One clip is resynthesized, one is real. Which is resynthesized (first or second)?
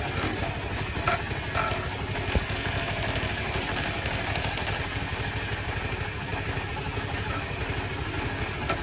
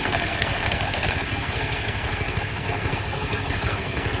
second